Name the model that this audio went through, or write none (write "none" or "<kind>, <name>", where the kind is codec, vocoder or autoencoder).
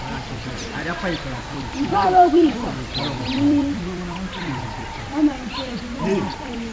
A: vocoder, BigVGAN v2